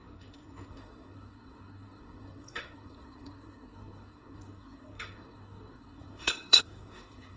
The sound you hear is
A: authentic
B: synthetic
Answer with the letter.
B